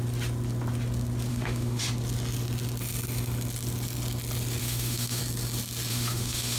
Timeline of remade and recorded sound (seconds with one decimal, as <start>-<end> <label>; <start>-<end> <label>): 0.0-1.3 recorded; 1.3-1.8 remade; 1.8-4.6 recorded; 4.6-5.2 remade; 5.2-5.9 recorded; 5.9-6.6 remade